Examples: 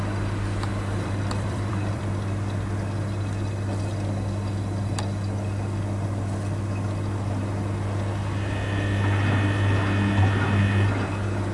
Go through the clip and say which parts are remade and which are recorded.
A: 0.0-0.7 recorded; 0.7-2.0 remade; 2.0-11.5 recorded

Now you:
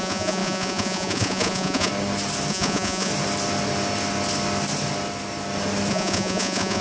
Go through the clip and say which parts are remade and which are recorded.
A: 0.0-1.9 remade; 1.9-2.5 recorded; 2.5-3.1 remade; 3.1-5.9 recorded; 5.9-6.8 remade